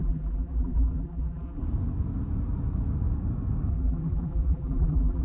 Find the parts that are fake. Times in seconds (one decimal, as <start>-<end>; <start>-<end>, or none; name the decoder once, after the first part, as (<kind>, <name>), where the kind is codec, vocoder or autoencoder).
0.0-1.6 (vocoder, BigVGAN v2); 3.7-5.2